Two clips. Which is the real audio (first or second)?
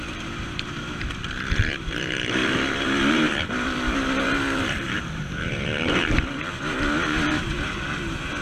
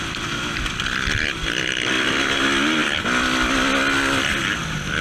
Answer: second